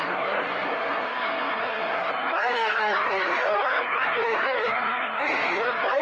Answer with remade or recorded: remade